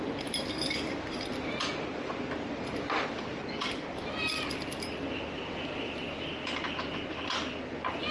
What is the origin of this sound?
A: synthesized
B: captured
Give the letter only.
B